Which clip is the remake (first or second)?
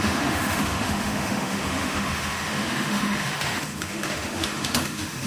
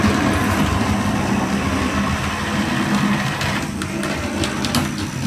first